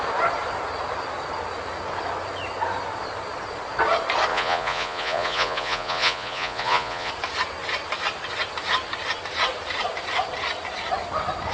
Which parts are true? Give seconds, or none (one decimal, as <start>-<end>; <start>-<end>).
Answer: 0.0-4.3; 7.1-11.5